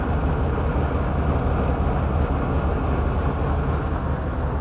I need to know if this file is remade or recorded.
recorded